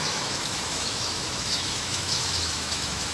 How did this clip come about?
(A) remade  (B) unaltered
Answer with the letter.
A